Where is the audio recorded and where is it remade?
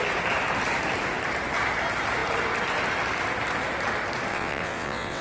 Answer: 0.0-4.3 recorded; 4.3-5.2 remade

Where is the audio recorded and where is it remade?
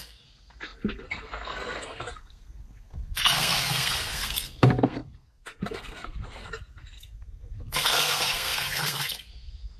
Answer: 0.0-9.8 remade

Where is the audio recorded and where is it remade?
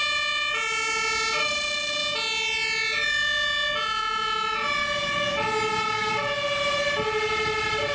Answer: 0.0-1.4 recorded; 1.4-2.0 remade; 2.0-6.6 recorded; 6.6-7.9 remade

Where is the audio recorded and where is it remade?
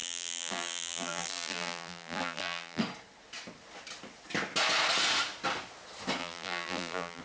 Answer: 0.0-2.8 remade; 2.8-6.2 recorded; 6.2-7.2 remade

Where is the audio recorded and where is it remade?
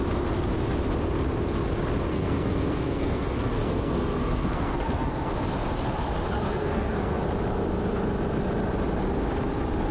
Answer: 0.0-2.1 recorded; 2.1-5.3 remade; 5.3-6.5 recorded; 6.5-7.2 remade; 7.2-9.9 recorded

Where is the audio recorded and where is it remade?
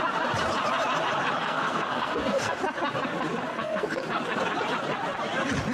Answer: 0.0-1.4 recorded; 1.4-2.6 remade; 2.6-3.5 recorded; 3.5-4.0 remade; 4.0-5.7 recorded